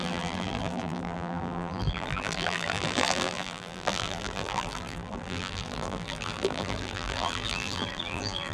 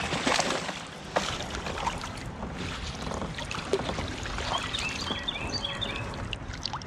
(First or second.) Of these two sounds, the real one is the second